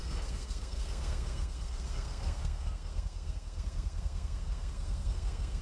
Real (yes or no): no